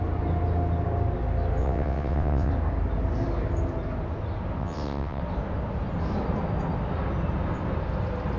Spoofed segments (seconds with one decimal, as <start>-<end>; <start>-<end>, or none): 1.6-2.5; 4.6-5.2